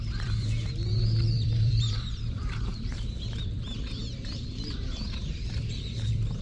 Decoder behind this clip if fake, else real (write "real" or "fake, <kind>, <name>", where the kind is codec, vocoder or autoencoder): fake, vocoder, BigVGAN v2